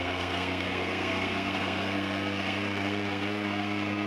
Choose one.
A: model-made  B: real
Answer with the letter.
A